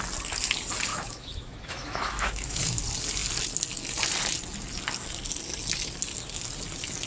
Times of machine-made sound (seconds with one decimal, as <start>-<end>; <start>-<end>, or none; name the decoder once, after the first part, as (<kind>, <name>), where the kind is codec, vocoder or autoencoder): 0.9-2.8 (autoencoder, DAC-VAE)